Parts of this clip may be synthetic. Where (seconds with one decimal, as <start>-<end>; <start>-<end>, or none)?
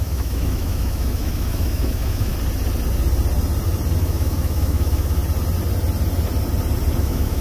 0.0-2.3; 4.0-5.2; 7.0-7.4